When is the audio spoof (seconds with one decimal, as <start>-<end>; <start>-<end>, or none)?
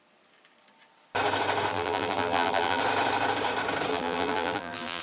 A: 1.7-2.8; 3.9-5.0